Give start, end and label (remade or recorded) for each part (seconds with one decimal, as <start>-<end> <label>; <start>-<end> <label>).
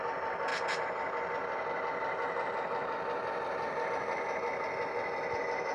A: 0.0-0.5 recorded; 0.5-3.9 remade; 3.9-5.7 recorded